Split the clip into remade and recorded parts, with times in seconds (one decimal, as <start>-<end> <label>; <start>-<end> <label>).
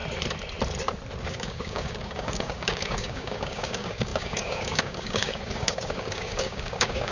0.0-1.3 recorded; 1.3-7.1 remade